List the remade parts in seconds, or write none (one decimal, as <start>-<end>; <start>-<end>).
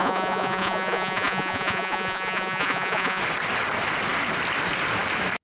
0.0-3.2